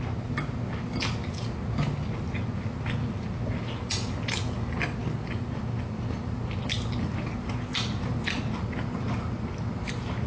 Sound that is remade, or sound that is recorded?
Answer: recorded